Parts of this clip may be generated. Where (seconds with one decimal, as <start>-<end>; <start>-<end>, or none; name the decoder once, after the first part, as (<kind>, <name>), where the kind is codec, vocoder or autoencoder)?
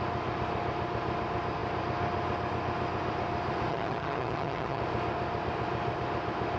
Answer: 3.7-4.8 (vocoder, HiFi-GAN)